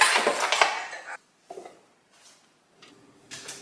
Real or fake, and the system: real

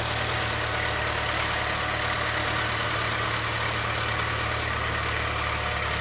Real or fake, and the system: real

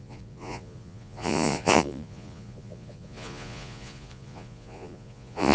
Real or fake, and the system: fake, vocoder, Vocos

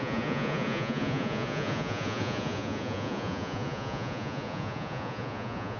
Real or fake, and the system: fake, vocoder, Vocos